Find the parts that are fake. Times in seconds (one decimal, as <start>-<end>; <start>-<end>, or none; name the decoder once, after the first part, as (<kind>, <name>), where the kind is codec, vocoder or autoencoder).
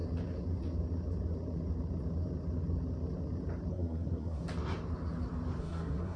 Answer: 3.7-4.4 (codec, SNAC); 5.6-6.2